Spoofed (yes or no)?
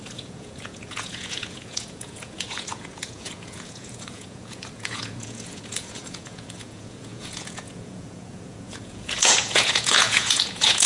yes